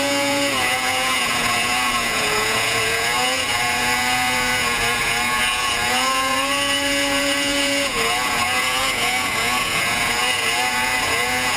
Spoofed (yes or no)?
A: yes